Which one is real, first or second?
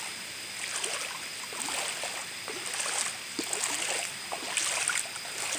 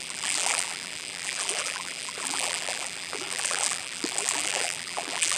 first